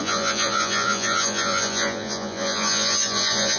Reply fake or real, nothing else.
fake